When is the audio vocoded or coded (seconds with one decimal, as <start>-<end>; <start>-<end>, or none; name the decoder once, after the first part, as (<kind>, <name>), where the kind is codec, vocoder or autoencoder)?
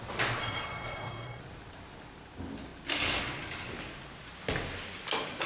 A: 0.4-1.4 (codec, SNAC)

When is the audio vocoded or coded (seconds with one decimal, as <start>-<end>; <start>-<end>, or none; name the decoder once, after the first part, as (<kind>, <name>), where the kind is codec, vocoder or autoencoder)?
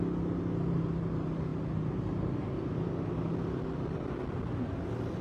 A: none